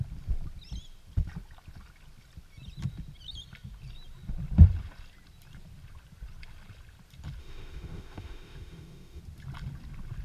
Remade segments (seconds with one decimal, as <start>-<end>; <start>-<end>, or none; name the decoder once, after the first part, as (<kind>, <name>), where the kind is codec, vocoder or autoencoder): 7.4-9.2 (autoencoder, DAC-VAE)